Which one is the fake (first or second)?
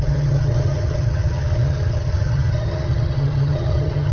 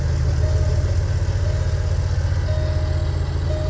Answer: first